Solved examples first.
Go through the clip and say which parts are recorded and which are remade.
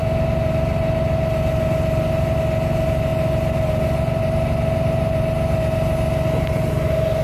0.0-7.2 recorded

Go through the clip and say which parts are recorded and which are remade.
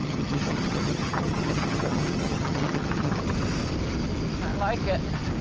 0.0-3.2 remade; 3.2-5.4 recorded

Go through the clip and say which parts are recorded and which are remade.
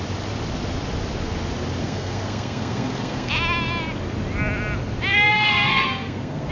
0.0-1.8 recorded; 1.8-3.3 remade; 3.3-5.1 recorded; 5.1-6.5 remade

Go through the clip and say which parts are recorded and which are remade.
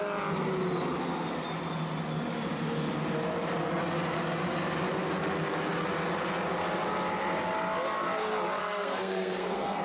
0.0-8.6 recorded; 8.6-9.8 remade